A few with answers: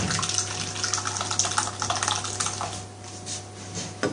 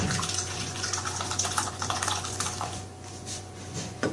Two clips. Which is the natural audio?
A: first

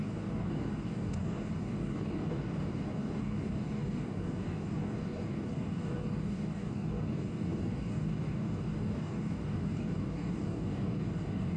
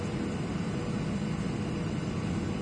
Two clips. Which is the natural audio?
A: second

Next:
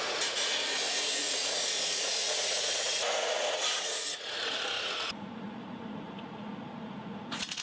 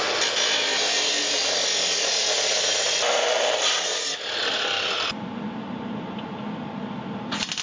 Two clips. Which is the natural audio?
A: second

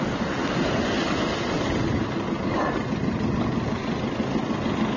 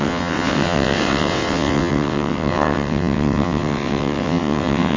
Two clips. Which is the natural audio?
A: first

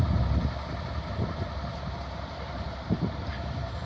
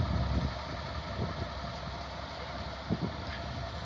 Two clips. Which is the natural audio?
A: second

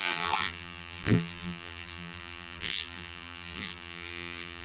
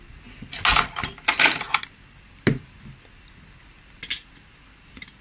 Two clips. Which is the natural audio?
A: second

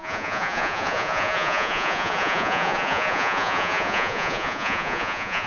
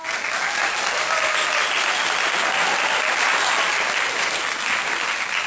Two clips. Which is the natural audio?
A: second